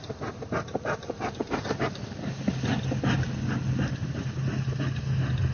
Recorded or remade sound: recorded